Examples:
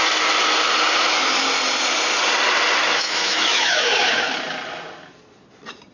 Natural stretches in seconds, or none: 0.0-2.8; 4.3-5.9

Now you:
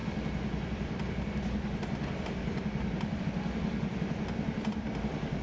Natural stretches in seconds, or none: 0.0-5.4

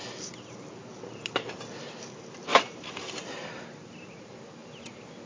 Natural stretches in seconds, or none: 0.0-2.5; 3.8-4.6

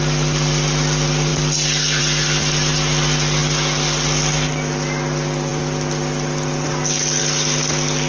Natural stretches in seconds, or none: 0.0-8.1